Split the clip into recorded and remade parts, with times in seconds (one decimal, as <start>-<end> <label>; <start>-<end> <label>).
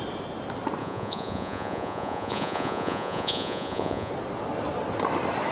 0.0-0.8 recorded; 0.8-4.1 remade; 4.1-5.5 recorded